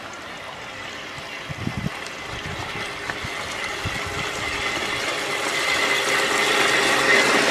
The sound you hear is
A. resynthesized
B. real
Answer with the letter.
B